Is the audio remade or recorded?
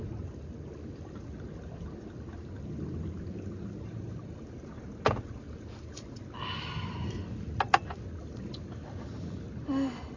recorded